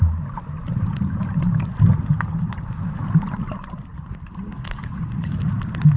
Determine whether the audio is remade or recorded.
recorded